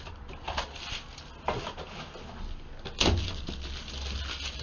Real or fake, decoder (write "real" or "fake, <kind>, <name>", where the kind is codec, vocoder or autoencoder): real